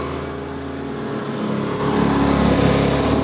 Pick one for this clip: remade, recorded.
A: recorded